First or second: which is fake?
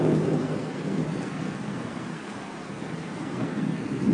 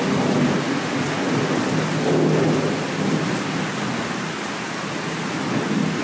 first